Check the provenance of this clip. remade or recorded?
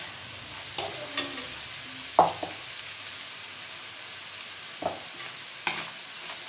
recorded